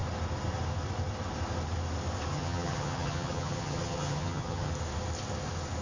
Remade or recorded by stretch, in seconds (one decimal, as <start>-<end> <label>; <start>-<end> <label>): 0.0-2.3 recorded; 2.3-4.7 remade; 4.7-5.8 recorded

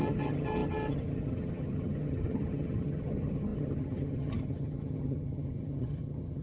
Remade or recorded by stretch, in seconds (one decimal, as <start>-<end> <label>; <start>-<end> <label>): 0.0-6.4 remade

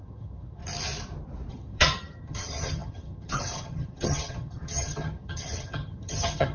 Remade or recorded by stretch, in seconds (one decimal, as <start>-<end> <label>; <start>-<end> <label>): 0.0-0.6 remade; 0.6-1.5 recorded; 1.5-6.5 remade